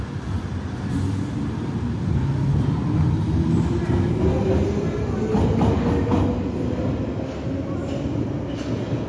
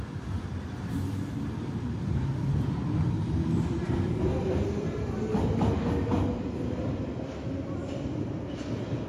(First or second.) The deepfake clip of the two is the second